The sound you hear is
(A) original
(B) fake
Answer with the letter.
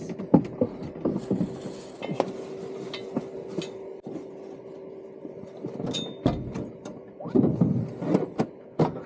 A